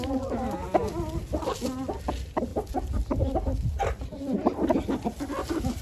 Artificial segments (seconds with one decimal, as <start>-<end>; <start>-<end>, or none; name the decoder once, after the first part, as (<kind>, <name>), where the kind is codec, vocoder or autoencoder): none